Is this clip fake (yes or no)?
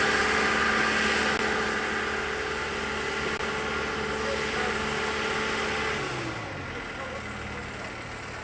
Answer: no